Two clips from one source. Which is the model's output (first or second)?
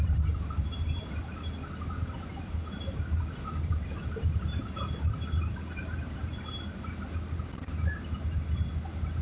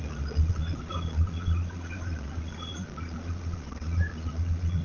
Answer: second